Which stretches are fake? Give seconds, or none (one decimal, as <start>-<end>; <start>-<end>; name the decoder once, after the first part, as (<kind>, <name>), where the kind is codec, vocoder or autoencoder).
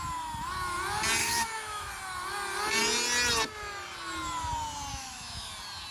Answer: 1.2-1.9 (autoencoder, DAC-VAE); 4.9-5.5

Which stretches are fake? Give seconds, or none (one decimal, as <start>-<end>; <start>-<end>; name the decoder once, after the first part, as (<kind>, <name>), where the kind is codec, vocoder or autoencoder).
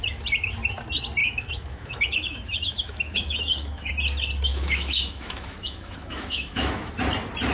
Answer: 1.2-3.9 (autoencoder, DAC-VAE); 4.5-6.9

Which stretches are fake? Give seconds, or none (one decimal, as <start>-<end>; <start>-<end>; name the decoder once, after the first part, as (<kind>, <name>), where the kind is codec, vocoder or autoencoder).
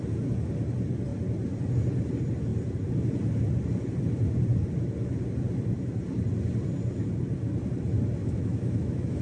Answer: 8.2-9.2 (autoencoder, DAC-VAE)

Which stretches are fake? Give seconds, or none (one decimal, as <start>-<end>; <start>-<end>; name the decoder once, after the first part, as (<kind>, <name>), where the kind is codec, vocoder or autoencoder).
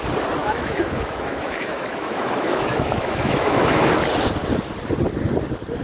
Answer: 0.4-3.9 (autoencoder, DAC-VAE)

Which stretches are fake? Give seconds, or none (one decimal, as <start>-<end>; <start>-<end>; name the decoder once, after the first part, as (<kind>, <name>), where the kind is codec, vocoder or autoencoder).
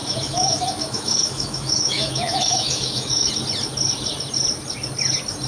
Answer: 0.0-3.3 (autoencoder, DAC-VAE)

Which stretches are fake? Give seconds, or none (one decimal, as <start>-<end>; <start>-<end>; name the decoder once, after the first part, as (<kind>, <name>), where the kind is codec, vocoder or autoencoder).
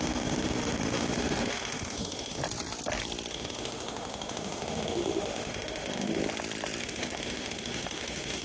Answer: 0.0-2.4 (autoencoder, DAC-VAE); 3.3-6.2; 6.8-8.4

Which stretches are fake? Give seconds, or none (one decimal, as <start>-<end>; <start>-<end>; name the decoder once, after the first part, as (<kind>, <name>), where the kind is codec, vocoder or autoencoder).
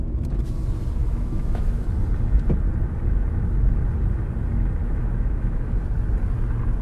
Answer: 1.0-1.9 (autoencoder, DAC-VAE); 4.8-5.8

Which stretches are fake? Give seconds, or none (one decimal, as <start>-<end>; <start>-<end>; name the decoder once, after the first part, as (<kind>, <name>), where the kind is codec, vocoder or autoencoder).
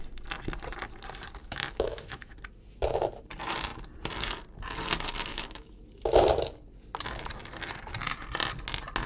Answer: 1.4-2.3 (autoencoder, DAC-VAE); 5.3-5.8